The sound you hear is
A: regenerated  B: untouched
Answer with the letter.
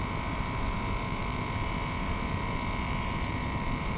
A